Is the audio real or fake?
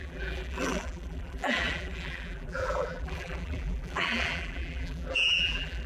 fake